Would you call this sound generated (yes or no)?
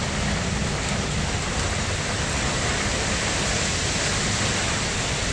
no